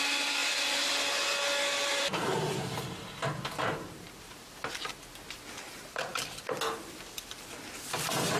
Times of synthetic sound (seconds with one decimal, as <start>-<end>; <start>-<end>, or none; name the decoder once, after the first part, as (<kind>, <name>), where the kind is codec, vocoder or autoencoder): 1.9-4.4 (vocoder, BigVGAN v2)